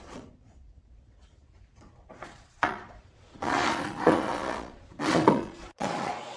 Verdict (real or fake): fake